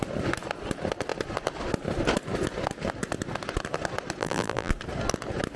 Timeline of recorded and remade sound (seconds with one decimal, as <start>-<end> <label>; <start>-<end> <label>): 0.0-4.2 recorded; 4.2-4.7 remade; 4.7-5.6 recorded